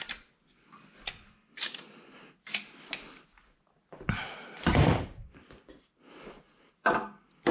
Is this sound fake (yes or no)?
no